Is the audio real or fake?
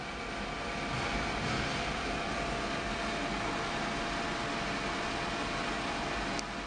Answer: real